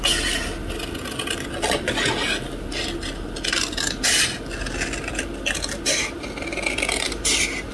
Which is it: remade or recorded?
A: remade